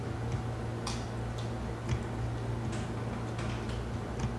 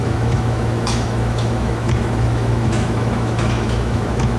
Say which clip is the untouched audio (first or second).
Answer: first